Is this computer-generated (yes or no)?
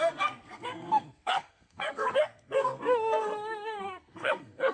yes